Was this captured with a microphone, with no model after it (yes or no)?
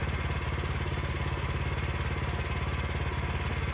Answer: yes